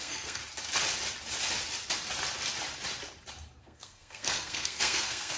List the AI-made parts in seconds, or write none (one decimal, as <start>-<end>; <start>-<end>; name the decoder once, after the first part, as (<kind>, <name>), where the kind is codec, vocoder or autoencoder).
0.0-0.4 (codec, SNAC); 3.6-5.4